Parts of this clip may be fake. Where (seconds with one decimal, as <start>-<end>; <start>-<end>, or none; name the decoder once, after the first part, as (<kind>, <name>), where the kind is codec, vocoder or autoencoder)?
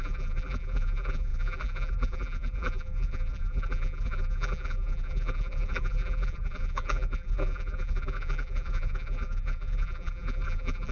0.0-10.9 (vocoder, BigVGAN v2)